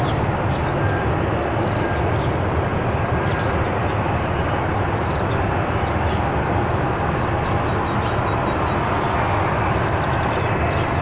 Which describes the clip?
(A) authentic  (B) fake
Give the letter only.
A